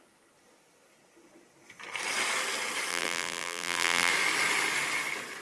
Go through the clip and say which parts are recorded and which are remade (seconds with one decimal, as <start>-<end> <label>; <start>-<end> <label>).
0.0-2.9 recorded; 2.9-4.1 remade; 4.1-5.4 recorded